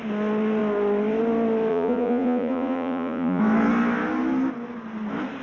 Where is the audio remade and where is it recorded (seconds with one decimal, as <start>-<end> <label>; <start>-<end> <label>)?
0.0-1.7 recorded; 1.7-3.4 remade; 3.4-5.4 recorded